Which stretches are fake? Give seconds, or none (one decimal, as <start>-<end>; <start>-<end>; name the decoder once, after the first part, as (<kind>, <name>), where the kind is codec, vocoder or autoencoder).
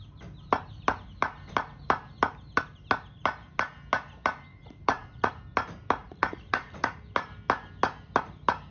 4.5-5.3 (vocoder, Vocos); 6.0-7.0